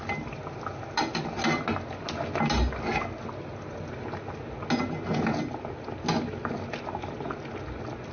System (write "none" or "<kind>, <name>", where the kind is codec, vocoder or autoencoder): none